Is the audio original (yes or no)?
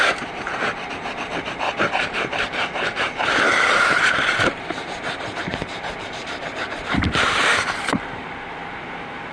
no